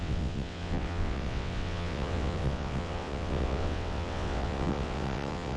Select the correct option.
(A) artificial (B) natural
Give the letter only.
A